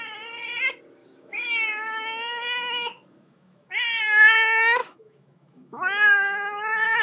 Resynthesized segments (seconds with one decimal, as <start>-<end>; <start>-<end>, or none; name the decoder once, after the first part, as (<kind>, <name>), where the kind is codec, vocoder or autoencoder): 1.0-4.0 (autoencoder, DAC-VAE); 4.8-7.0